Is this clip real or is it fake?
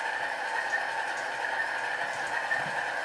real